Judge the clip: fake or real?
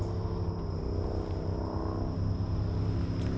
real